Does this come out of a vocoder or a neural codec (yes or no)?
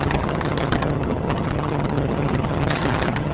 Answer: yes